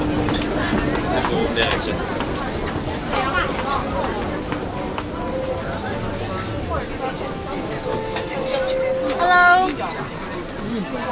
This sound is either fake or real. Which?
real